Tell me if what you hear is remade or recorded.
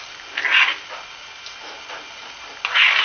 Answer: recorded